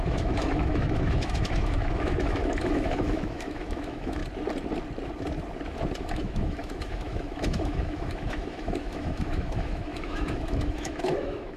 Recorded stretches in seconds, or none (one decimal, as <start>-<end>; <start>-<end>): 4.2-6.0